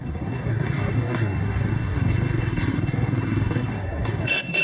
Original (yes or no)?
no